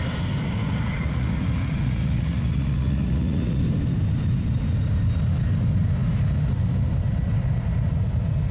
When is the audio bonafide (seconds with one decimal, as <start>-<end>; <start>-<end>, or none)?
0.0-0.6; 3.6-8.5